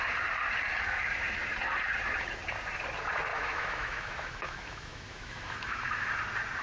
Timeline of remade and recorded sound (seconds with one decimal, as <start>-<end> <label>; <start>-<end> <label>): 0.0-3.3 recorded; 3.3-6.1 remade; 6.1-6.6 recorded